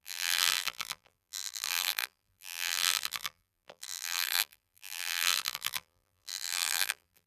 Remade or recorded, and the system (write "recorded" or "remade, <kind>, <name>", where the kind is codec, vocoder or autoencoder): remade, vocoder, BigVGAN v2